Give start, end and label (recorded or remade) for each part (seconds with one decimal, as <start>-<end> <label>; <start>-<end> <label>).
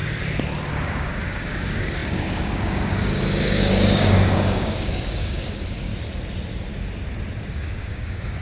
0.0-0.7 recorded; 0.7-5.9 remade; 5.9-7.4 recorded; 7.4-8.4 remade